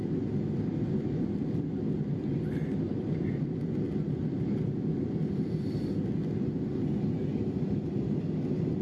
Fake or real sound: real